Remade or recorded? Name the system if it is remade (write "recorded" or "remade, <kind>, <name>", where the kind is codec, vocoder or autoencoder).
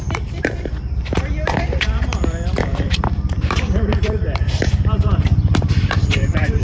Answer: remade, vocoder, BigVGAN v2